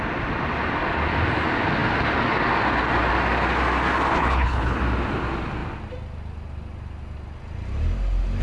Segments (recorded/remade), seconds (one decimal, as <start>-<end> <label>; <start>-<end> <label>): 0.0-4.1 recorded; 4.1-4.8 remade; 4.8-8.4 recorded